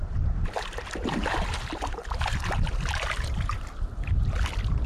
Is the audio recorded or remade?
remade